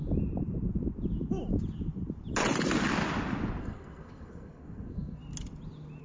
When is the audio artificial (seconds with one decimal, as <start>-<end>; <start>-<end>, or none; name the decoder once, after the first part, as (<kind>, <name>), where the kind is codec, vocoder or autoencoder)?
3.6-5.2 (codec, SNAC)